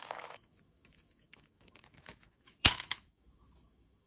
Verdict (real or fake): fake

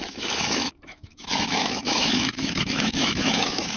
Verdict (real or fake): fake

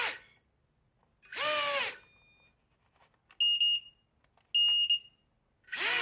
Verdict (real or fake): real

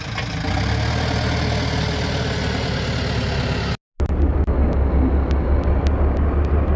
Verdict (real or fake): real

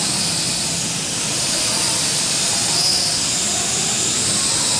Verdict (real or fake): real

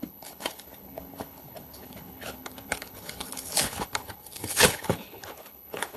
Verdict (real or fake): fake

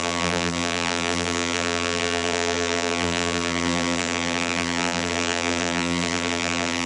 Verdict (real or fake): fake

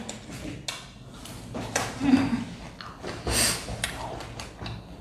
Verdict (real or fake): real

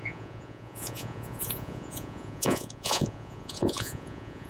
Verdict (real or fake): fake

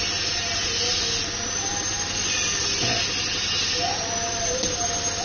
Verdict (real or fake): real